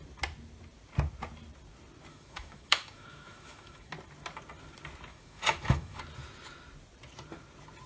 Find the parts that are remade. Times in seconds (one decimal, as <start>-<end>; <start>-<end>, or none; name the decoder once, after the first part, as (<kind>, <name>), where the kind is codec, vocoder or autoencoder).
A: 2.1-3.9 (autoencoder, DAC-VAE); 5.1-6.0